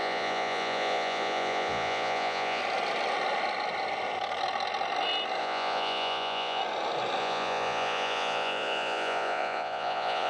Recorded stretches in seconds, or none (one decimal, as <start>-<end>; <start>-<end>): 2.6-5.4; 6.6-7.2